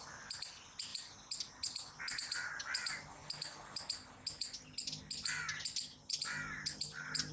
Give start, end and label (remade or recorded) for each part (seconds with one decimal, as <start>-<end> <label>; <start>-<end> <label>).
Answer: 0.0-7.3 recorded